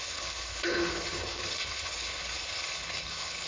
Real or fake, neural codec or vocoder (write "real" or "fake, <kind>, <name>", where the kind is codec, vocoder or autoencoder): fake, codec, HILCodec